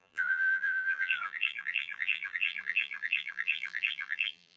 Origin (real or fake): fake